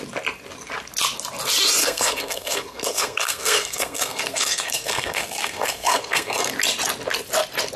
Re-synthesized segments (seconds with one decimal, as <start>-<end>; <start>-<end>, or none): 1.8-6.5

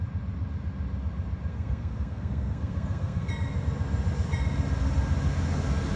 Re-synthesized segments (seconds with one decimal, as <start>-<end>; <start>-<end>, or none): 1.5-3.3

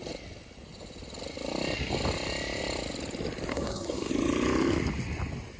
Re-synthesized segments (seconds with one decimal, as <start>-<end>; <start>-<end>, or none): 3.5-4.1

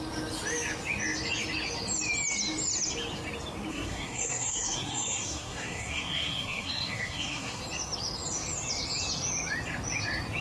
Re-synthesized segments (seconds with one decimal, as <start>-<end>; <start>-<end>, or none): 3.7-7.6

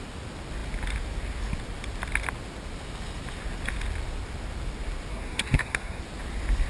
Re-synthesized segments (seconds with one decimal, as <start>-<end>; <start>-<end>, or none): 5.1-6.0

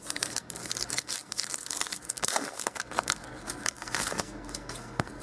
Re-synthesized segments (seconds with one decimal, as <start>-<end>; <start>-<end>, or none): 0.0-5.2